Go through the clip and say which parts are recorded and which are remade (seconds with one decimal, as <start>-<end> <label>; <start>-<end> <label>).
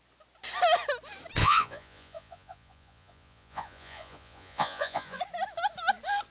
0.0-1.4 recorded; 1.4-5.2 remade; 5.2-6.3 recorded